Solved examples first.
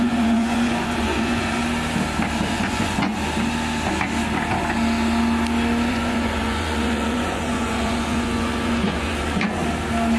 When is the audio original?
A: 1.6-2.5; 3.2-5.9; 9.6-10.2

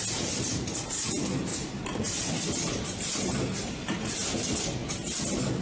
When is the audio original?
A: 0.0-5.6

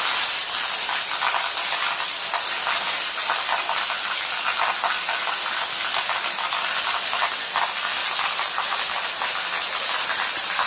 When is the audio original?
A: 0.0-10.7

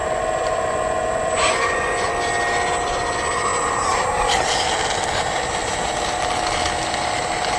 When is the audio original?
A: 2.1-7.6

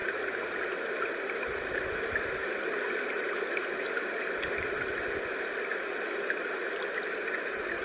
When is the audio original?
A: 0.0-7.8

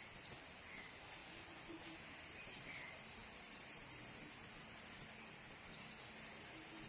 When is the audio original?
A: 0.0-1.2; 1.8-6.9